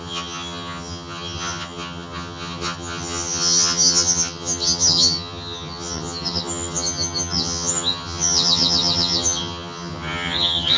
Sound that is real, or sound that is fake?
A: fake